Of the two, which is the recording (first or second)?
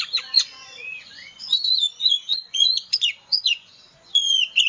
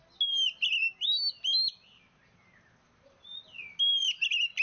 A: second